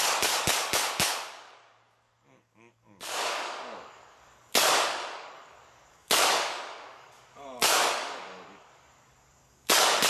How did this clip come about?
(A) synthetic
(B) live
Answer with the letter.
A